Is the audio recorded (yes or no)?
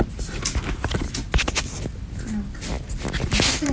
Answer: yes